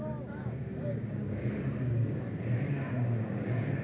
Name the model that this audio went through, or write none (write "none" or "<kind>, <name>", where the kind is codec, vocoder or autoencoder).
codec, DAC